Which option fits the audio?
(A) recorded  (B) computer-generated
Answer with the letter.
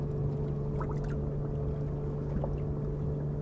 A